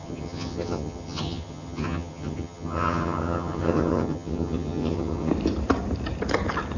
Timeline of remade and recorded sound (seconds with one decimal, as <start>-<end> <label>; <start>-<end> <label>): 0.0-5.3 remade; 5.3-6.8 recorded